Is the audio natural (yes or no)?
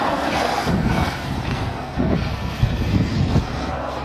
no